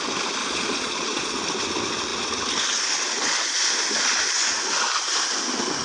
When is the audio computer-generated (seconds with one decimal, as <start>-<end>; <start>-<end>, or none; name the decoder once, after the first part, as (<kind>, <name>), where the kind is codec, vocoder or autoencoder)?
0.4-1.4 (vocoder, Vocos)